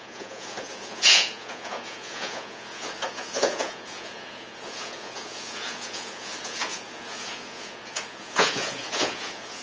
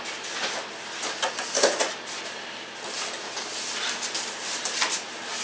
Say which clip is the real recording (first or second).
second